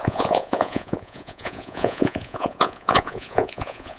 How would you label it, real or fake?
fake